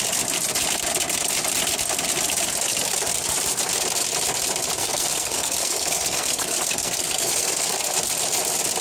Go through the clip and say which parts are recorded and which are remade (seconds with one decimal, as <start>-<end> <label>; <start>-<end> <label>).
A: 0.0-4.8 recorded; 4.8-7.8 remade; 7.8-8.8 recorded